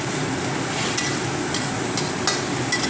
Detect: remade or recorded recorded